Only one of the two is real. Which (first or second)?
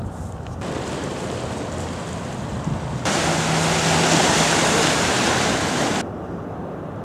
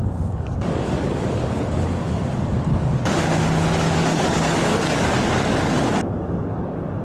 first